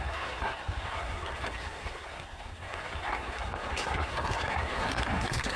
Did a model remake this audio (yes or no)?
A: yes